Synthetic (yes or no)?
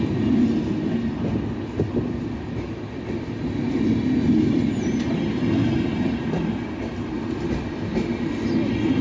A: no